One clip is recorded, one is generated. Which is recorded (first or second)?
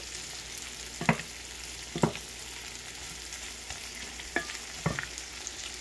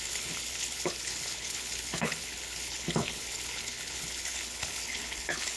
first